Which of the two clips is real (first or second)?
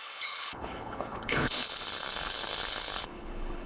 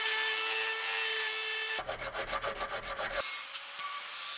second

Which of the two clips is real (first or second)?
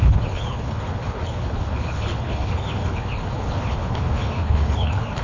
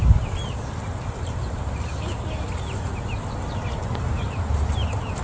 second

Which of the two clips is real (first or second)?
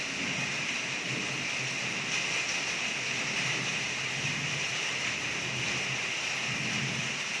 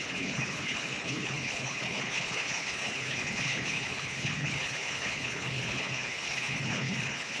first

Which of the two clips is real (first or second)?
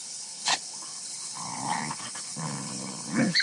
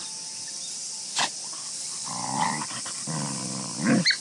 second